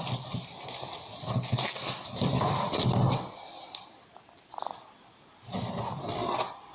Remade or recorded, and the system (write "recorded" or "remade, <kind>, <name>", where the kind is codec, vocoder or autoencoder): recorded